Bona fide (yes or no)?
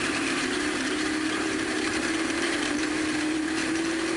no